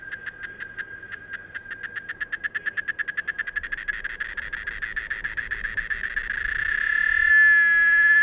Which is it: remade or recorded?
recorded